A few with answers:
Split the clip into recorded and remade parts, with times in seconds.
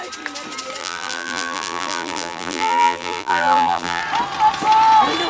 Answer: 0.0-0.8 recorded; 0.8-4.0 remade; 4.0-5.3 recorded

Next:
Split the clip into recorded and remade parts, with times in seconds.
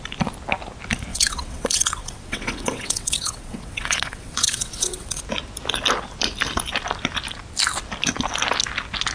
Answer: 0.0-1.1 recorded; 1.1-5.2 remade; 5.2-9.1 recorded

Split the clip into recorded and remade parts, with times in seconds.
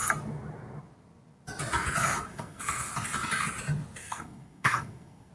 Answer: 0.0-2.3 recorded; 2.3-2.9 remade; 2.9-4.0 recorded; 4.0-5.3 remade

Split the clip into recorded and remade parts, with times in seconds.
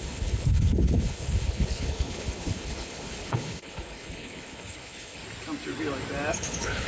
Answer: 0.0-5.2 remade; 5.2-6.3 recorded; 6.3-6.9 remade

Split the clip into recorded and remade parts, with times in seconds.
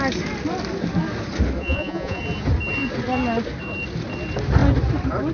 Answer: 0.0-1.6 recorded; 1.6-2.2 remade; 2.2-5.3 recorded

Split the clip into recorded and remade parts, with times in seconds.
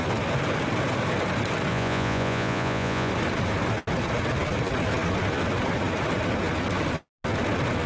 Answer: 0.0-1.7 recorded; 1.7-3.1 remade; 3.1-7.9 recorded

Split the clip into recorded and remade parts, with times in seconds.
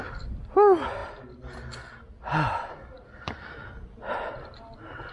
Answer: 0.0-5.1 recorded